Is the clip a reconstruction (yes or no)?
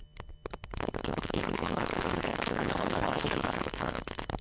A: yes